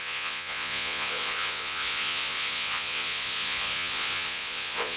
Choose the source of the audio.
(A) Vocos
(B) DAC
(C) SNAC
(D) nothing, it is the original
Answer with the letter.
A